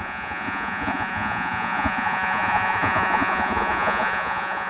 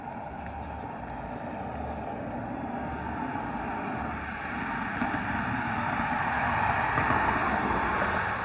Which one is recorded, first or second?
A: second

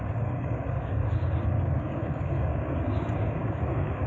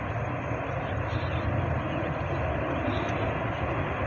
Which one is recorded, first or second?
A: second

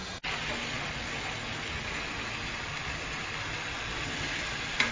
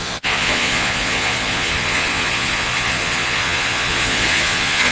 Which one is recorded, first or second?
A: first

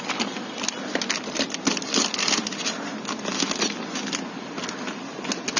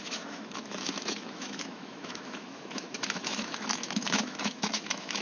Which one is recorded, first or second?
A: first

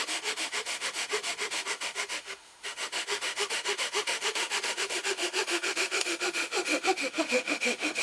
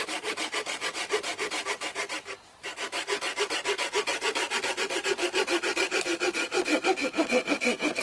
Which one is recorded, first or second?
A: second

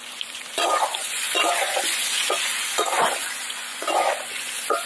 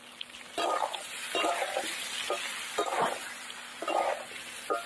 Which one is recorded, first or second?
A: second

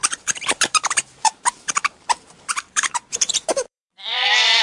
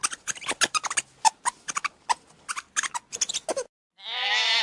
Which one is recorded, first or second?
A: second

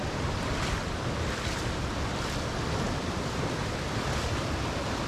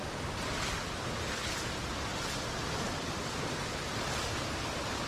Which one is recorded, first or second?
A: second